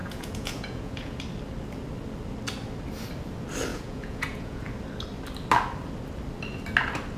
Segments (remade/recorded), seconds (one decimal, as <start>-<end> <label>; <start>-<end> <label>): 0.0-1.2 remade; 1.2-3.7 recorded; 3.7-4.6 remade; 4.6-7.2 recorded